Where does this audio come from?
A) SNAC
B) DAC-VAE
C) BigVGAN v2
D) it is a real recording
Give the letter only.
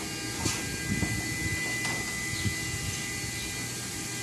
D